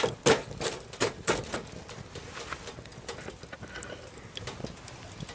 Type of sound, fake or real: real